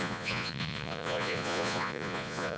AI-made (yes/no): yes